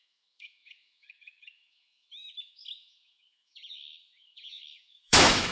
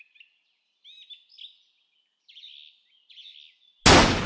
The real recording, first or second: second